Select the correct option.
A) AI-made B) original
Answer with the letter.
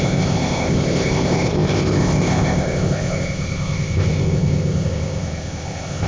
A